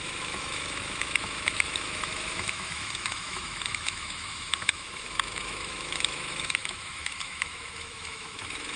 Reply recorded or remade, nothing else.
remade